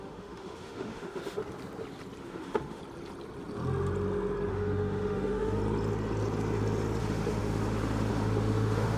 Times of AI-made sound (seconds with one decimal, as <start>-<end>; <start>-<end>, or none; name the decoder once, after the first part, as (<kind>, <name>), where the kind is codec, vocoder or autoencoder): 0.0-1.4 (autoencoder, DAC-VAE); 2.2-2.8; 4.5-5.6; 7.0-9.0